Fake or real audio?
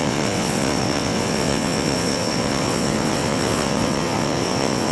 fake